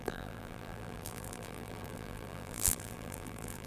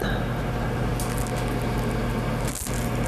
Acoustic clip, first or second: second